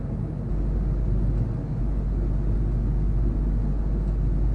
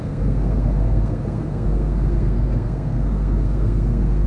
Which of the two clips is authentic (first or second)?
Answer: first